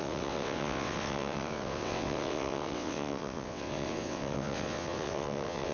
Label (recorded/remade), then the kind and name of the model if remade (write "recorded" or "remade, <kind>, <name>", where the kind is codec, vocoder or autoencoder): remade, vocoder, WaveNeXt